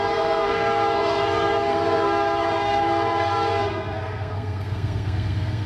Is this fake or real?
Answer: fake